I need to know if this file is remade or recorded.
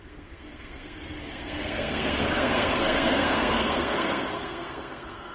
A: remade